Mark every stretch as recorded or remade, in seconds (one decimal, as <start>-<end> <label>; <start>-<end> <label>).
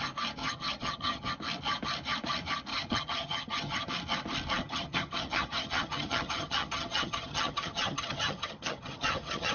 0.0-0.4 recorded; 0.4-1.3 remade; 1.3-2.7 recorded; 2.7-3.9 remade; 3.9-4.6 recorded; 4.6-9.5 remade